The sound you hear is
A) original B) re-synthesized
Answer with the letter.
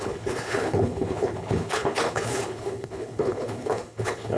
B